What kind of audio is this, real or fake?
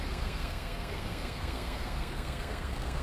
fake